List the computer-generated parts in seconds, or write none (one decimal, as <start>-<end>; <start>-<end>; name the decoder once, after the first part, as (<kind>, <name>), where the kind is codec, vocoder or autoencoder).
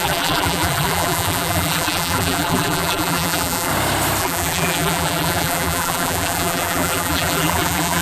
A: 0.0-3.7 (vocoder, BigVGAN v2); 4.2-8.0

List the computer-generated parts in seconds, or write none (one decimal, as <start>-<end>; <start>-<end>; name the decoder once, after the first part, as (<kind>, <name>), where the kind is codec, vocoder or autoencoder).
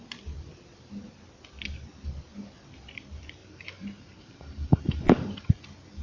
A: 3.4-5.5 (vocoder, BigVGAN v2)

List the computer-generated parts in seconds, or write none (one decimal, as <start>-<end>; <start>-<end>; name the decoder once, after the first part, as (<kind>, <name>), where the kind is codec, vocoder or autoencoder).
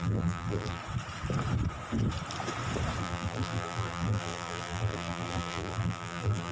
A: 0.0-0.8 (vocoder, BigVGAN v2); 3.0-6.5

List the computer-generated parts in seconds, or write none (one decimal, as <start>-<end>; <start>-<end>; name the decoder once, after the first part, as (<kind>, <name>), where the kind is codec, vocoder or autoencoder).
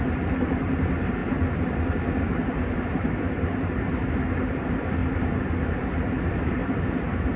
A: 0.0-1.2 (vocoder, BigVGAN v2); 2.2-5.0; 5.8-7.4